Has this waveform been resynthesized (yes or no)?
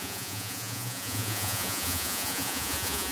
yes